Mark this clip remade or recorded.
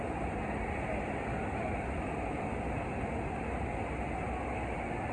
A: recorded